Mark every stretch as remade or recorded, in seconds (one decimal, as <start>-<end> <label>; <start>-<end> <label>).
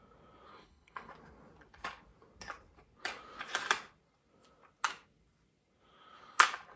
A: 0.0-0.5 recorded; 0.5-1.1 remade; 1.1-6.8 recorded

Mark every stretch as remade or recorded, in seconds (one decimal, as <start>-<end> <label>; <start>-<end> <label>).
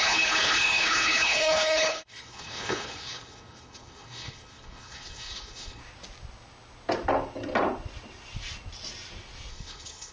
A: 0.0-5.8 remade; 5.8-9.5 recorded; 9.5-10.1 remade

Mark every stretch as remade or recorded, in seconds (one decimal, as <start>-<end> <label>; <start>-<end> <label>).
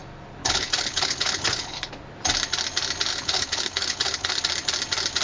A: 0.0-0.4 recorded; 0.4-1.9 remade; 1.9-3.1 recorded; 3.1-4.4 remade; 4.4-5.2 recorded